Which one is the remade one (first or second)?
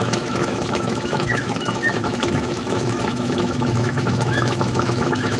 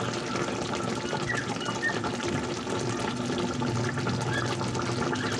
first